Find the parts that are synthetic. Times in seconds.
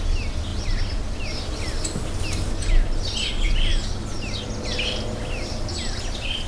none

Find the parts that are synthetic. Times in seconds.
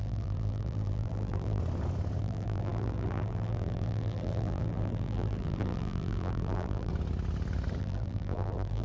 0.0-1.6 (vocoder, BigVGAN v2); 2.2-6.9; 7.8-8.8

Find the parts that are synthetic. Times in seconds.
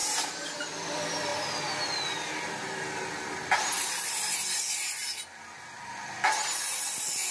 0.0-0.7 (vocoder, BigVGAN v2)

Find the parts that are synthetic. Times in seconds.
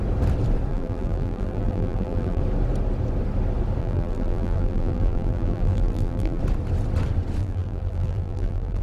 0.7-2.4 (vocoder, BigVGAN v2); 3.8-6.4; 7.4-8.8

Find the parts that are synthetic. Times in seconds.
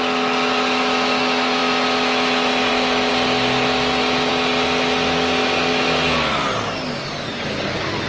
none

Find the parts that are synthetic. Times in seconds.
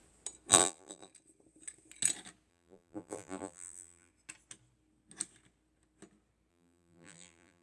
0.5-1.1 (vocoder, BigVGAN v2); 2.5-4.1; 6.5-7.6